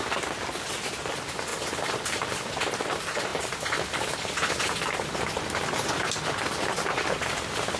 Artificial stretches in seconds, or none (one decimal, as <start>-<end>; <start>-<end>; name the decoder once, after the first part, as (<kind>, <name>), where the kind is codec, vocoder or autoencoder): 1.5-2.3 (vocoder, BigVGAN v2)